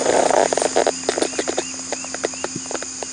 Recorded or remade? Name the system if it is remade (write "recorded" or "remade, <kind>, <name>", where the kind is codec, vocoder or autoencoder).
recorded